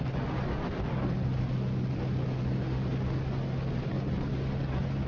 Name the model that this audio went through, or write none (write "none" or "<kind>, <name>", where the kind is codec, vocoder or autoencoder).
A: none